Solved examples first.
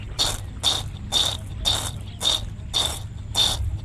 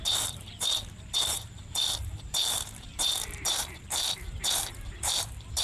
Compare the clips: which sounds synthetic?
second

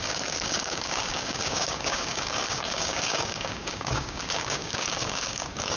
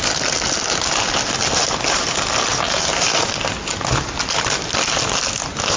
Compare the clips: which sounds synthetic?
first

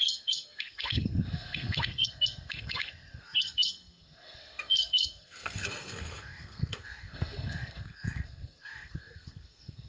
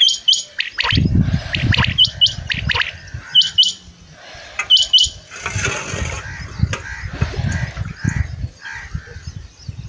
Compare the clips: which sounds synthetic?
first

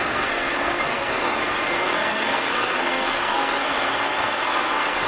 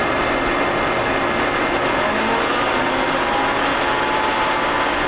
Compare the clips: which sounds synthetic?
first